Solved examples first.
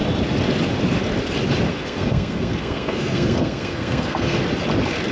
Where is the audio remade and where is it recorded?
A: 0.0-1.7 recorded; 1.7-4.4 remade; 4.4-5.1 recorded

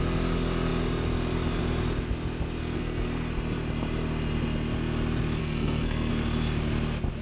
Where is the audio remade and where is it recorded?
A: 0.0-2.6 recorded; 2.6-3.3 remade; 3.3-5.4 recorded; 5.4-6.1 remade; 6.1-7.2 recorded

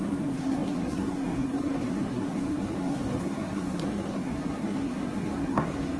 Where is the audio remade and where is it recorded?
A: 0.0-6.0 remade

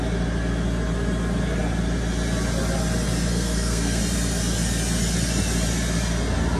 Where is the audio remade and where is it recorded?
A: 0.0-3.3 recorded; 3.3-4.0 remade; 4.0-6.6 recorded

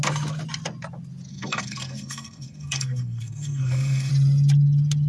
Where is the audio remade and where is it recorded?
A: 0.0-1.3 recorded; 1.3-4.1 remade; 4.1-5.1 recorded